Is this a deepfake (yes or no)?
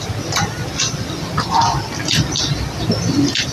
no